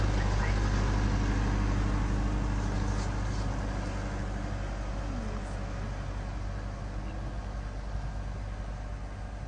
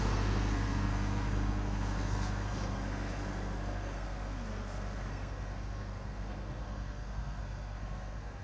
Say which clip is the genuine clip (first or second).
first